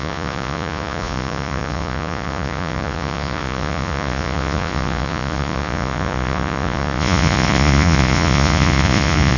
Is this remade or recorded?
remade